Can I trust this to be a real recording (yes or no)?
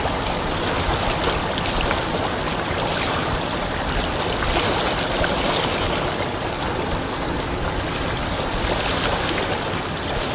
yes